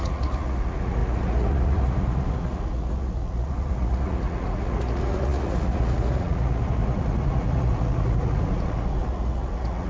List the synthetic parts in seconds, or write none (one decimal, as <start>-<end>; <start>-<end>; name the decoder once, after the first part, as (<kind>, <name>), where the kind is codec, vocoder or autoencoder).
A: 0.0-9.9 (vocoder, Vocos)

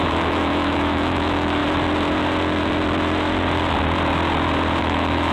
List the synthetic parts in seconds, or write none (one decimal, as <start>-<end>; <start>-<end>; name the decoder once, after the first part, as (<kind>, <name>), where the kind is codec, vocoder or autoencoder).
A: 0.0-1.6 (autoencoder, DAC-VAE); 4.8-5.3

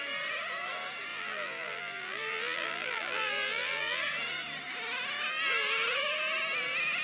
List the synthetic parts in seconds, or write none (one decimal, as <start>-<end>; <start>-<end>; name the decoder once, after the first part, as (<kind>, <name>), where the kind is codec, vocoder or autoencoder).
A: 1.1-4.0 (vocoder, BigVGAN v2)

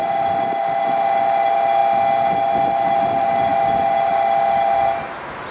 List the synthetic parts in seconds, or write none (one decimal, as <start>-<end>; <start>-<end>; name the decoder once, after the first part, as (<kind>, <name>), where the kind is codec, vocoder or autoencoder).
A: none

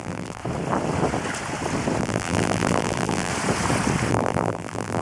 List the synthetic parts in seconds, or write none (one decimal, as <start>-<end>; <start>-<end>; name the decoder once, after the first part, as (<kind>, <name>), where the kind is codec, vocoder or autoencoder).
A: 0.0-0.4 (vocoder, BigVGAN v2); 2.0-3.3; 4.1-5.0

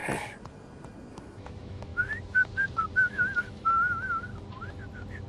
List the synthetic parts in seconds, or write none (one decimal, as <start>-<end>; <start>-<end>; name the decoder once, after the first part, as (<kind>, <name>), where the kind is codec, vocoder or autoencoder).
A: 1.1-1.9 (autoencoder, DAC-VAE); 2.9-4.3